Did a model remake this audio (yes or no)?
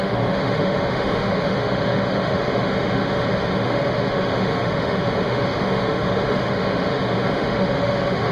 yes